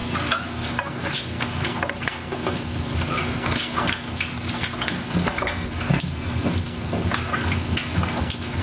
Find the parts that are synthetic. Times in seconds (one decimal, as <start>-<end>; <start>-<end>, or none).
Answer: 0.0-8.6